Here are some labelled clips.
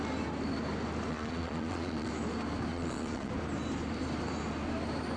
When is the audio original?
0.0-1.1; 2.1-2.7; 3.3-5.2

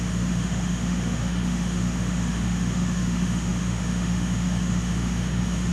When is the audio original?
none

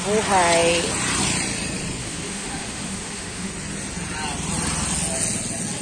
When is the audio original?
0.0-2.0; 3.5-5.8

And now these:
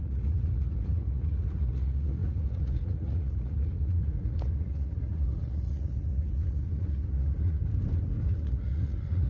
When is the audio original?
7.6-8.3

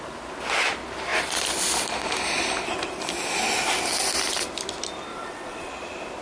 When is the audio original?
0.0-5.1; 5.7-6.2

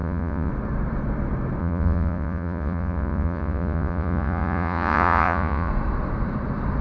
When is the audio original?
0.5-1.6; 5.7-6.8

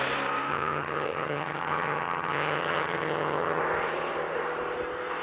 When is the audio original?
0.0-0.5; 3.6-5.2